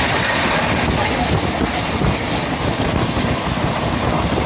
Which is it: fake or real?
real